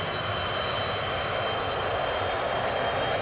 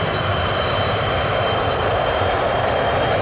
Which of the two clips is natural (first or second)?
first